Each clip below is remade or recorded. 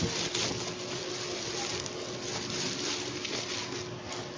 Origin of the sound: recorded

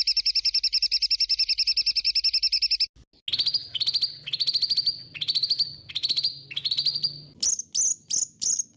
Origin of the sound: recorded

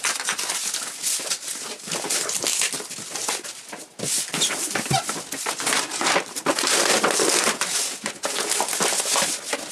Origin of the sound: recorded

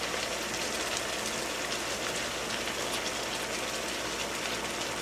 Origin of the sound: recorded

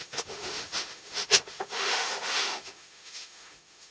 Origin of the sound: remade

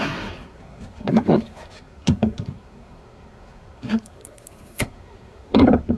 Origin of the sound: remade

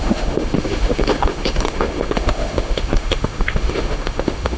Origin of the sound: remade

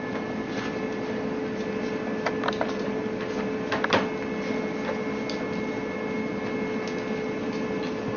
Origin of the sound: recorded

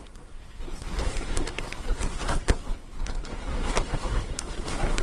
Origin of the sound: remade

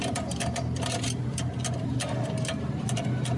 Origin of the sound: remade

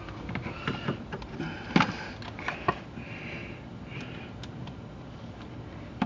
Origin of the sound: recorded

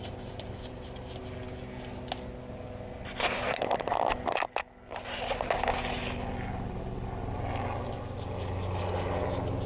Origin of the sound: recorded